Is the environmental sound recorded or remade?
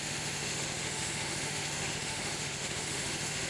remade